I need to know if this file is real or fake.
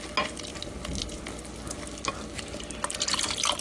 real